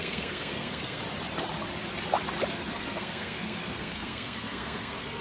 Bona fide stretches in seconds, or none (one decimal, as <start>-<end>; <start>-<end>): 1.0-2.5